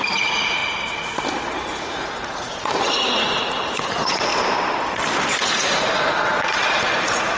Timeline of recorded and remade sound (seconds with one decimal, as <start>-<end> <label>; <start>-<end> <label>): 0.0-0.6 remade; 0.6-1.8 recorded; 1.8-4.3 remade; 4.3-5.4 recorded; 5.4-7.4 remade